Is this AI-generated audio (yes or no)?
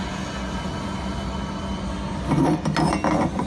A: no